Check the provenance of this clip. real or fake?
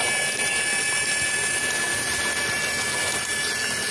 real